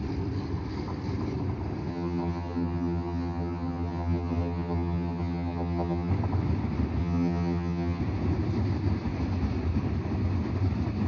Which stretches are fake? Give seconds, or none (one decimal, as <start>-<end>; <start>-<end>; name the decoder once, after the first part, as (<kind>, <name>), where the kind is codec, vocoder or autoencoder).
1.9-6.1 (vocoder, HiFi-GAN); 7.0-8.0